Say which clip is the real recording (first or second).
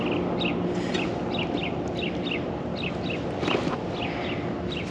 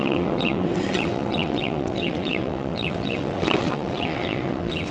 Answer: first